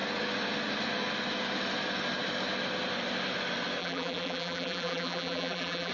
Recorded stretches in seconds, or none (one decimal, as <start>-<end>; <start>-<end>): 0.0-3.8